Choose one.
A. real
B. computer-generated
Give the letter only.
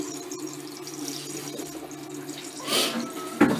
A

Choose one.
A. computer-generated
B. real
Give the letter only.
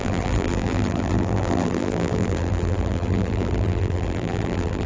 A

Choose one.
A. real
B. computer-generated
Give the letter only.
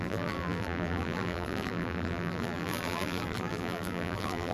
B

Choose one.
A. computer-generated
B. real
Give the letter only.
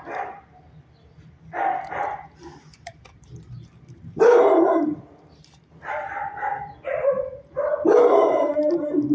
A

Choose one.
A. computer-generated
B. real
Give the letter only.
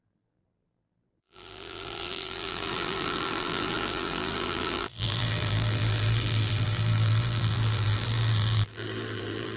A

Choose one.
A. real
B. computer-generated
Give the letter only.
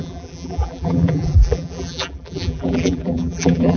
B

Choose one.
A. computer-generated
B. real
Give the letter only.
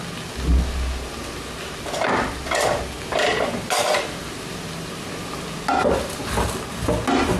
B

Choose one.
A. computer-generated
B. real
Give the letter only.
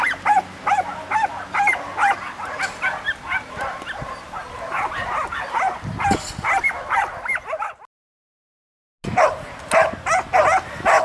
B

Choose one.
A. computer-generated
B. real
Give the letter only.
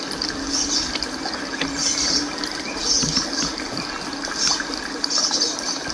B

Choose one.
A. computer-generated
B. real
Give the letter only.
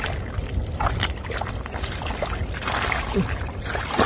A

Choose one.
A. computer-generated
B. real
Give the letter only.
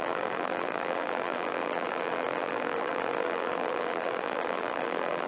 A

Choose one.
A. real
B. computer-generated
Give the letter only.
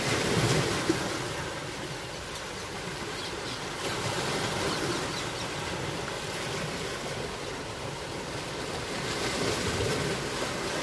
A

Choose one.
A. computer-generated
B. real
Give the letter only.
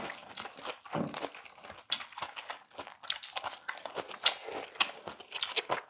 B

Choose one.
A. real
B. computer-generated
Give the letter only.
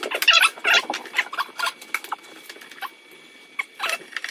A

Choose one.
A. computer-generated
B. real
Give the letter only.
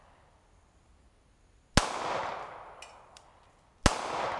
B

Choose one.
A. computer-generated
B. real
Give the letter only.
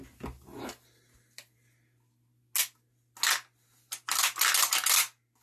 B